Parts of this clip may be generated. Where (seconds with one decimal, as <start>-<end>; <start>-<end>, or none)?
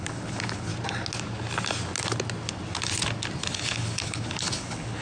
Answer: 0.0-0.7; 3.5-5.0